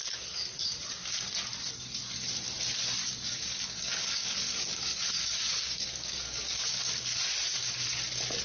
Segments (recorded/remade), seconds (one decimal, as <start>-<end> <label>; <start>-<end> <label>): 0.0-3.0 recorded; 3.0-6.9 remade; 6.9-8.4 recorded